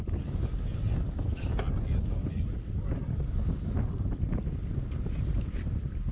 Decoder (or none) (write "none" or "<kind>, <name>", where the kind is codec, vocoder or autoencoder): none